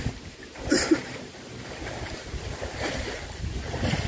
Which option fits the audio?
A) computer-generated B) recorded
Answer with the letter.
A